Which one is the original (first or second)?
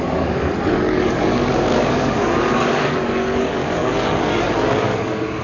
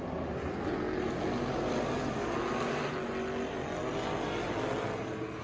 second